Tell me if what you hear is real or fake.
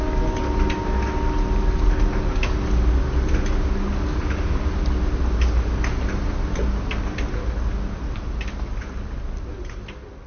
real